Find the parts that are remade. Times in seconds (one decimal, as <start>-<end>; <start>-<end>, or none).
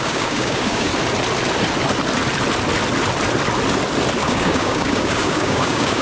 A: 0.0-0.9; 4.2-6.0